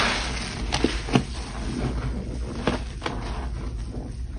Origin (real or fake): real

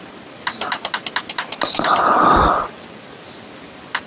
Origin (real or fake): real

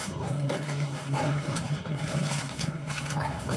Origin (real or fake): fake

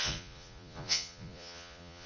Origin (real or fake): fake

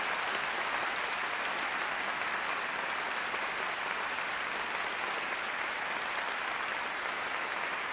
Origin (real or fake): real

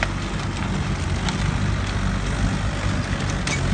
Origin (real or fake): real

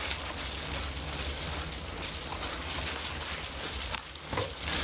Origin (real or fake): real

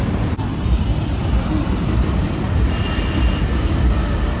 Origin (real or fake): real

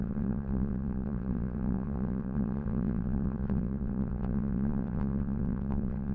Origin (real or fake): fake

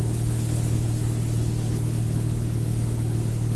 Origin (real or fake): fake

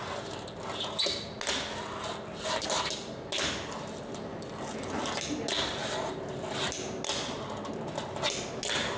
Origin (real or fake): real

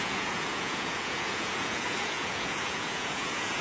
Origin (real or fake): fake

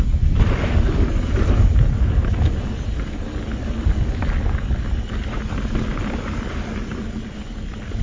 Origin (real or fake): real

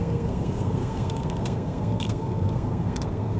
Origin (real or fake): fake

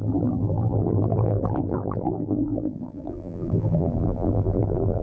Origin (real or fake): fake